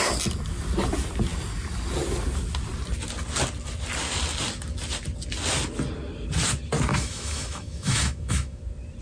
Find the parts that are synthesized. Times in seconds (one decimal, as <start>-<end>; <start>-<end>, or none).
6.9-8.6